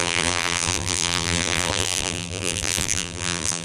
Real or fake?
fake